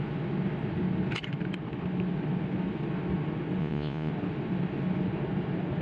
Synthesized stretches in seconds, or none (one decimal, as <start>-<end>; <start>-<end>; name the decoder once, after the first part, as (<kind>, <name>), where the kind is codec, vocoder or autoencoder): 3.6-4.1 (vocoder, Vocos)